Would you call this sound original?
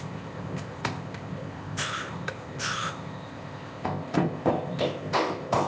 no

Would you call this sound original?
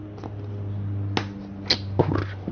yes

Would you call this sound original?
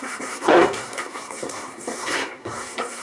no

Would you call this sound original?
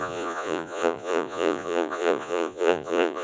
no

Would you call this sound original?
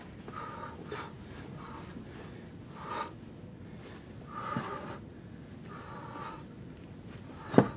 yes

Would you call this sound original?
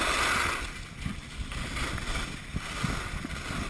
yes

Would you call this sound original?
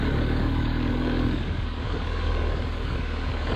no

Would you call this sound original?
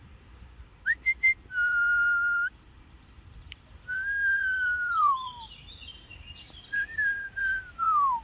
no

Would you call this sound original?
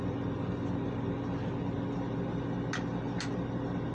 yes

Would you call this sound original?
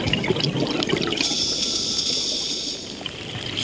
yes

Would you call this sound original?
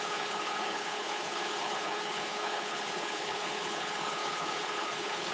no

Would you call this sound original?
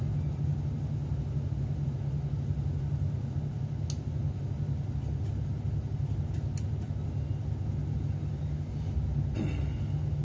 yes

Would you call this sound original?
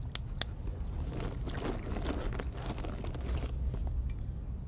yes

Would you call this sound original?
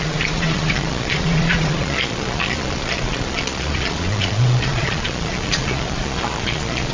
no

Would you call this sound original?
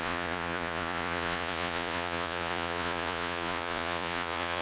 no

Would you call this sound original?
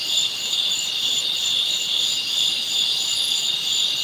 yes